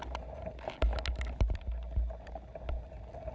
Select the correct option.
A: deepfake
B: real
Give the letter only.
B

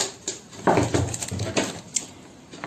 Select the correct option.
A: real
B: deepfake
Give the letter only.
A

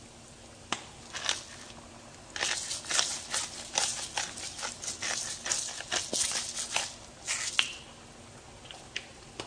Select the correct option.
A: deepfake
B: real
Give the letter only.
B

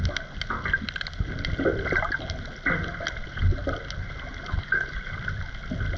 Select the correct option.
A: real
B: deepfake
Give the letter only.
A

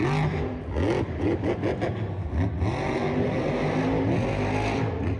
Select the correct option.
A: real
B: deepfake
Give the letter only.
A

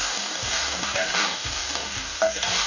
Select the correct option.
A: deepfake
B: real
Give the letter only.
A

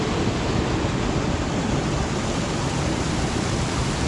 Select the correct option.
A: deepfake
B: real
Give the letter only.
B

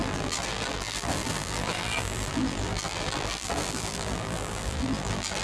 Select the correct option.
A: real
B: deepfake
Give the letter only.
B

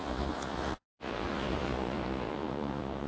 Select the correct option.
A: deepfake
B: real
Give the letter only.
A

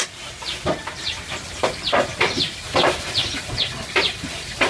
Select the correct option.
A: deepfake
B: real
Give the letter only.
B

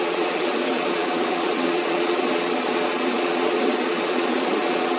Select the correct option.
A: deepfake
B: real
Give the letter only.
A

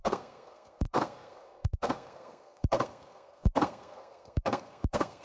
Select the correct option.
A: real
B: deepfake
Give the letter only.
B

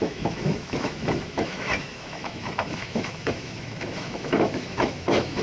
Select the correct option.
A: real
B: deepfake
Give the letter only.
B